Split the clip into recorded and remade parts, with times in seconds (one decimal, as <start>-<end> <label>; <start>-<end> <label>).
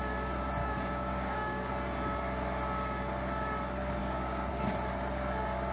0.0-0.6 recorded; 0.6-1.7 remade; 1.7-4.0 recorded; 4.0-4.5 remade; 4.5-5.7 recorded